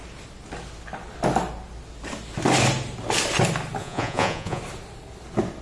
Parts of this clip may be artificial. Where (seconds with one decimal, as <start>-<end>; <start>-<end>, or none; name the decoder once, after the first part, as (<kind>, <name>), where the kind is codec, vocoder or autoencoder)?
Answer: 3.8-4.6 (vocoder, Vocos)